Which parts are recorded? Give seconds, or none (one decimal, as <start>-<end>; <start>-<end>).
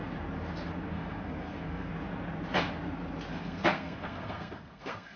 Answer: 0.0-0.9; 1.9-3.3